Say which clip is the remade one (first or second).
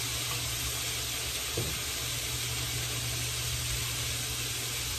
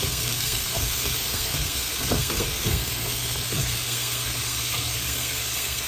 second